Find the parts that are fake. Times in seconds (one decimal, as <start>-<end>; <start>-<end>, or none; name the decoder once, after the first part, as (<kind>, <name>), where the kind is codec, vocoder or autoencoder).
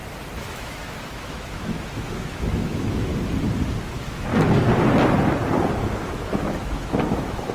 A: 0.5-3.1 (autoencoder, DAC-VAE); 3.9-4.3; 5.8-7.5